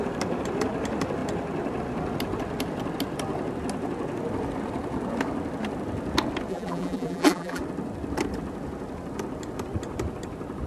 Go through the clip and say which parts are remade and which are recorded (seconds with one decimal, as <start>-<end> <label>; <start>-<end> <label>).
0.0-6.5 recorded; 6.5-7.6 remade; 7.6-10.7 recorded